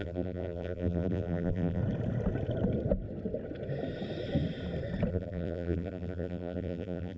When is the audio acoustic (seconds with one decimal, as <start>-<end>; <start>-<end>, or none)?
1.8-5.1